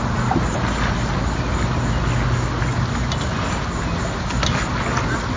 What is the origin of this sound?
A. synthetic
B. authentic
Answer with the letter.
B